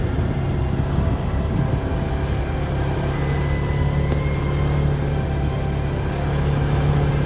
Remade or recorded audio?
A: recorded